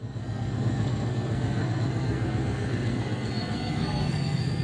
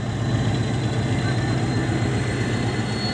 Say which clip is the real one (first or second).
second